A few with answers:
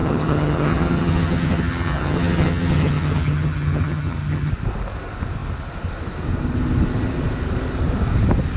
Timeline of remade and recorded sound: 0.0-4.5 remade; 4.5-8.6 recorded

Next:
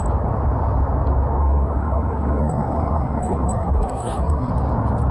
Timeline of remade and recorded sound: 0.0-1.4 recorded; 1.4-4.5 remade; 4.5-5.1 recorded

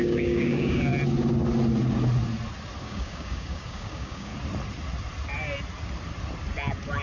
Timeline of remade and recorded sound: 0.0-0.9 remade; 0.9-2.8 recorded; 2.8-4.3 remade; 4.3-7.0 recorded

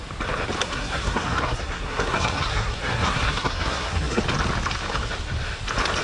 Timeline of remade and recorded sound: 0.0-0.6 recorded; 0.6-4.2 remade; 4.2-6.0 recorded

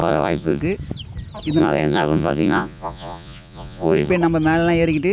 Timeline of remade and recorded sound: 0.0-0.6 remade; 0.6-1.6 recorded; 1.6-4.1 remade; 4.1-5.1 recorded

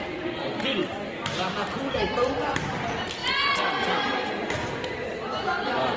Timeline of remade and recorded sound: 0.0-0.8 remade; 0.8-1.5 recorded; 1.5-3.2 remade; 3.2-5.6 recorded; 5.6-6.0 remade

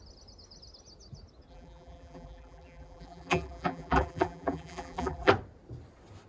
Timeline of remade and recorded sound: 0.0-1.5 recorded; 1.5-5.3 remade; 5.3-6.3 recorded

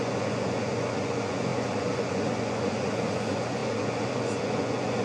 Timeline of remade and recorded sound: 0.0-5.0 remade